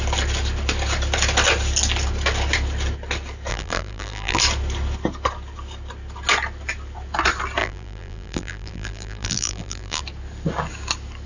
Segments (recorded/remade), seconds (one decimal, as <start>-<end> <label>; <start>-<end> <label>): 0.0-3.5 recorded; 3.5-4.4 remade; 4.4-7.6 recorded; 7.6-10.0 remade; 10.0-11.3 recorded